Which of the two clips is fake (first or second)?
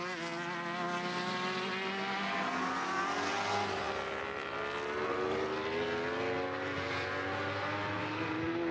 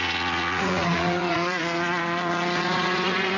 second